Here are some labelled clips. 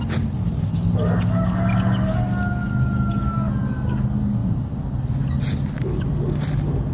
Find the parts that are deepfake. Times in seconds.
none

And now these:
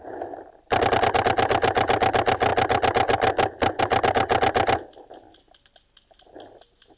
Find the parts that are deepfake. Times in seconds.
none

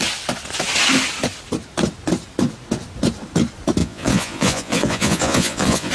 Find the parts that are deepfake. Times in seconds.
3.8-5.9 (vocoder, Vocos)

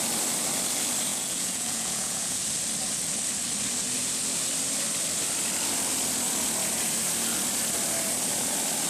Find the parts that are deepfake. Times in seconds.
1.1-2.4 (vocoder, Vocos)